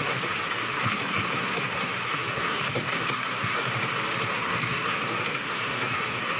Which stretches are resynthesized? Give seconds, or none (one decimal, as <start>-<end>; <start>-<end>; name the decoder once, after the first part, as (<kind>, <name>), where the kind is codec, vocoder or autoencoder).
0.0-3.7 (codec, SNAC); 4.2-6.4